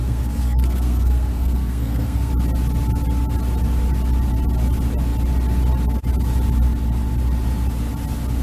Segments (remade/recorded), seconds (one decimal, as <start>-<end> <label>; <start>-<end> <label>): 0.0-2.3 remade; 2.3-8.4 recorded